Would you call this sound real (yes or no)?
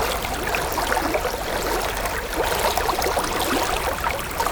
yes